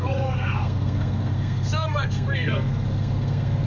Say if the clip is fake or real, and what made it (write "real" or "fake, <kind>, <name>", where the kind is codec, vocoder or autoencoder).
fake, codec, SNAC